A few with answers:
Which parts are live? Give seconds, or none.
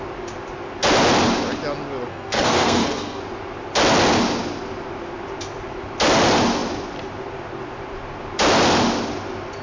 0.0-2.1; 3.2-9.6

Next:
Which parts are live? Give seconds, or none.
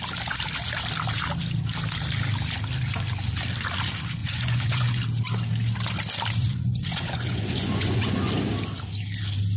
0.0-4.2; 5.0-6.4; 8.3-9.6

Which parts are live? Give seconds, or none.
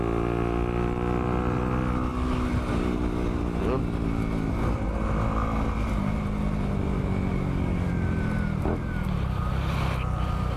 0.0-7.3; 7.9-10.6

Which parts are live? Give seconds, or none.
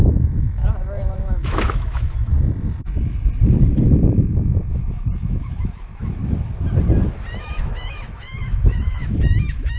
0.6-1.2; 2.3-4.3; 6.2-7.4